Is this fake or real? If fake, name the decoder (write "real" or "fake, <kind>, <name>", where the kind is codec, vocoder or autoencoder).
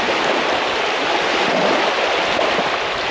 real